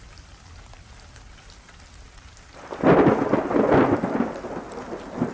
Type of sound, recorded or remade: recorded